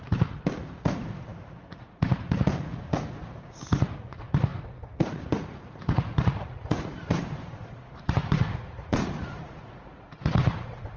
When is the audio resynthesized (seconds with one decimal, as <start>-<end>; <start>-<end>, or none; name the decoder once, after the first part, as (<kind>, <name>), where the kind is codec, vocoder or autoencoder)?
0.0-11.0 (vocoder, Vocos)